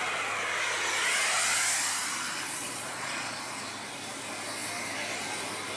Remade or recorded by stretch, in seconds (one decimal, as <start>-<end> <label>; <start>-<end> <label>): 0.0-2.6 recorded; 2.6-3.5 remade; 3.5-5.8 recorded